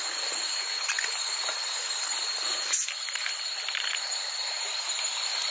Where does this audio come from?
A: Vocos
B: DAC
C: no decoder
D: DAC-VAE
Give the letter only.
C